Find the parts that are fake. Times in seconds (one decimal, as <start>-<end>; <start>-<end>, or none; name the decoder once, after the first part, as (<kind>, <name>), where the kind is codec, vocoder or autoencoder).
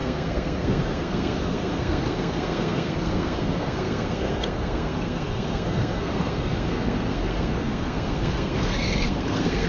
0.0-9.7 (codec, SNAC)